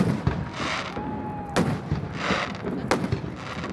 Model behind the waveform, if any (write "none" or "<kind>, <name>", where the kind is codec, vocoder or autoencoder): none